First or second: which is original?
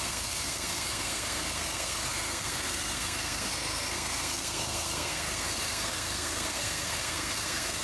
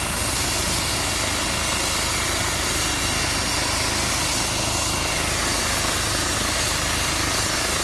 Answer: second